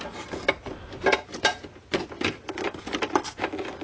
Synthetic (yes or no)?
no